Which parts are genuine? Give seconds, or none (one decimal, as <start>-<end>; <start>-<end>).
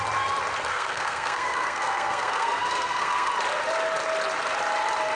0.0-0.7; 3.3-5.1